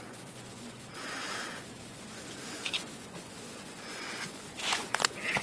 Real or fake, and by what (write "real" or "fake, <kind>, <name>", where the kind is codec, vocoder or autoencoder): fake, vocoder, Vocos